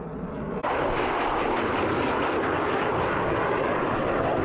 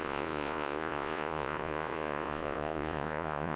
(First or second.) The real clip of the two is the first